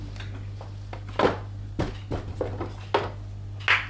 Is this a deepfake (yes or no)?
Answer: no